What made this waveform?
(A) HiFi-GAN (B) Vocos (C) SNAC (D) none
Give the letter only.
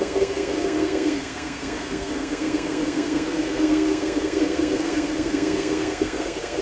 C